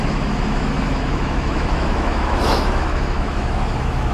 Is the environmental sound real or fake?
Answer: fake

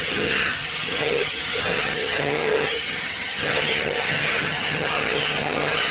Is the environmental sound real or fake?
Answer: fake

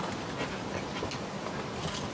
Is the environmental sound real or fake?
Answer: real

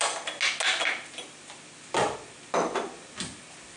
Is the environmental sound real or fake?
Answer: real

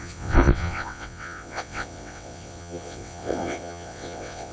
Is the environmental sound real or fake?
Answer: fake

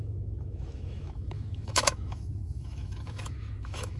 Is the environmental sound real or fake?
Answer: fake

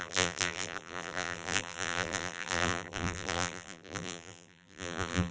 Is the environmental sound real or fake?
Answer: fake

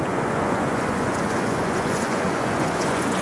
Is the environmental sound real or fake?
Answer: fake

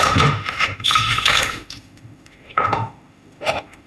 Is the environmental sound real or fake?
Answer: fake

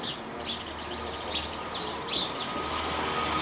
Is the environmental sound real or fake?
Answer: real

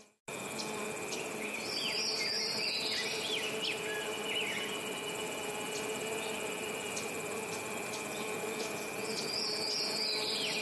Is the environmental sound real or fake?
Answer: real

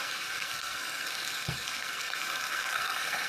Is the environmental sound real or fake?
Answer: fake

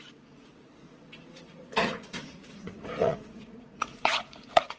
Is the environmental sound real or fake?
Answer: fake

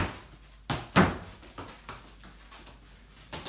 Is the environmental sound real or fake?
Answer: real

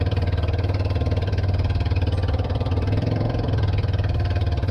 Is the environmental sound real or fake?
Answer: fake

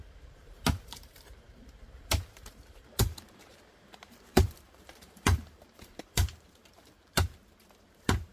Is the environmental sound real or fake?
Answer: fake